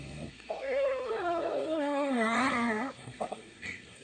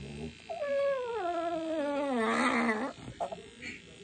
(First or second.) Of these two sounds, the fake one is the first